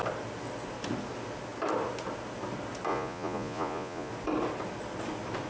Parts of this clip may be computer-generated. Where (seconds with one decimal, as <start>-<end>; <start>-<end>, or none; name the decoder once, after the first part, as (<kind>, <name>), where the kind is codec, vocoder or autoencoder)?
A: 2.9-4.1 (vocoder, Vocos)